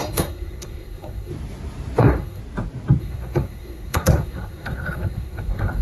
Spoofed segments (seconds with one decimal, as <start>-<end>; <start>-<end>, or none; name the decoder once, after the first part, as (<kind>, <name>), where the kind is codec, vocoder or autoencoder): 0.0-1.3 (codec, SNAC); 2.0-2.4; 3.0-5.8